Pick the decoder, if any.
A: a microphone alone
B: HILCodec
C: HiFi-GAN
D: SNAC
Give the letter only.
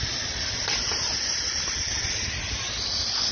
A